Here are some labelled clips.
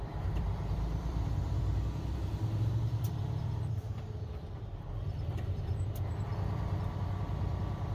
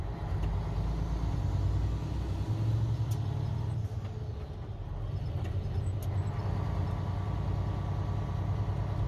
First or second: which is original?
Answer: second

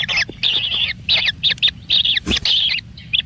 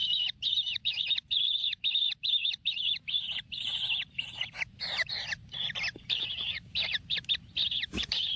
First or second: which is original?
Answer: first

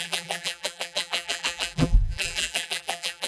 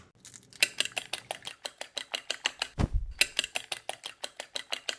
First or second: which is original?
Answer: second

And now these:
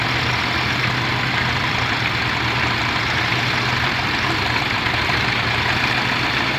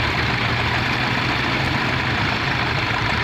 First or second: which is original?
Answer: first